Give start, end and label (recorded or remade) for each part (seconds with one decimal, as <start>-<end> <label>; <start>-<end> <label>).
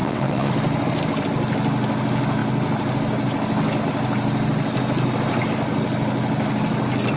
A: 0.0-0.5 remade; 0.5-7.2 recorded